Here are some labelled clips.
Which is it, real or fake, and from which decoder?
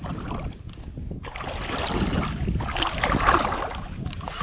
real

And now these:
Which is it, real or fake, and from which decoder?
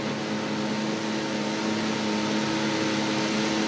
real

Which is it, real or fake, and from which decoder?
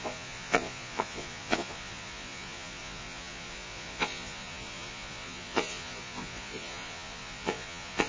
fake, vocoder, Vocos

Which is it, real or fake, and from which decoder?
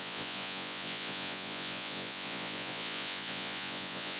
fake, vocoder, Vocos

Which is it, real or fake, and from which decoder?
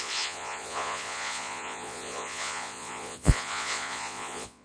fake, vocoder, Vocos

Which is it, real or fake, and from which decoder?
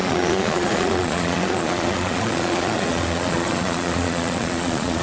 fake, vocoder, Vocos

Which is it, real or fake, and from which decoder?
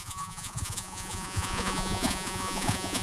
fake, vocoder, Vocos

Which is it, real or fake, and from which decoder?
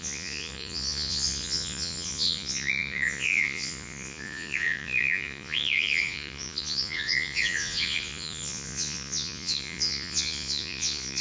fake, vocoder, Vocos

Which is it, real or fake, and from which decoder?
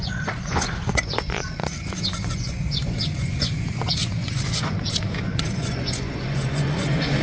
fake, vocoder, Vocos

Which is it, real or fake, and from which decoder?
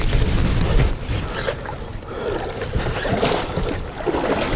real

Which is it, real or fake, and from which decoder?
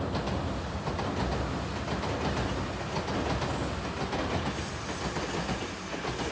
real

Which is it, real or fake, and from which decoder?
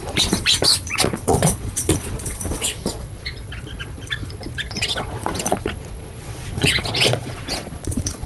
fake, vocoder, Vocos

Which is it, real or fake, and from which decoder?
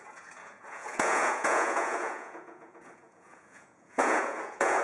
fake, vocoder, Vocos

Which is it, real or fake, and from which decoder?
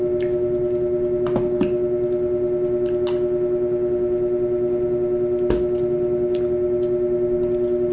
real